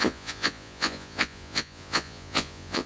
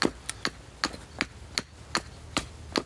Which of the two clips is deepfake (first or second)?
first